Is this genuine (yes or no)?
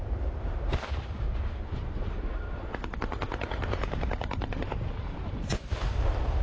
no